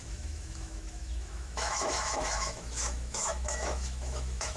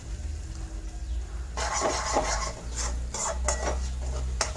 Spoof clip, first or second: first